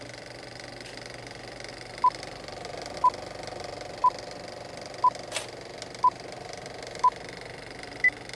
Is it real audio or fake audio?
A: real